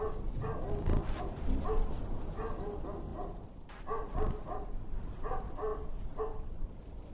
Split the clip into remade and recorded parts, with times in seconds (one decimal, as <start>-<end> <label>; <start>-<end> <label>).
0.0-7.1 recorded